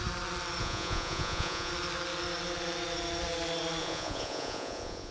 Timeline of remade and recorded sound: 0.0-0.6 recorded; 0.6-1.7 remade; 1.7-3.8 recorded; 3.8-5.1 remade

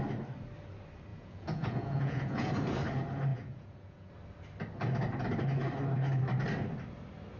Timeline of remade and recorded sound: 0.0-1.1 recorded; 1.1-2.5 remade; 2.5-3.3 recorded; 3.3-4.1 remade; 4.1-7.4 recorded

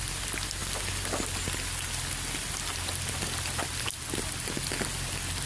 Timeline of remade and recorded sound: 0.0-5.5 recorded

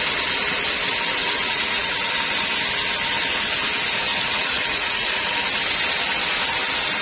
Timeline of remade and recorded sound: 0.0-1.2 recorded; 1.2-2.1 remade; 2.1-4.1 recorded; 4.1-5.4 remade; 5.4-7.0 recorded

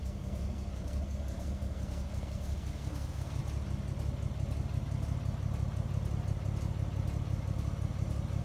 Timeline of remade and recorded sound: 0.0-3.4 remade; 3.4-8.4 recorded

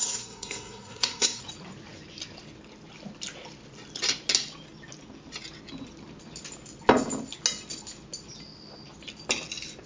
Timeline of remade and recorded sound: 0.0-1.4 remade; 1.4-9.9 recorded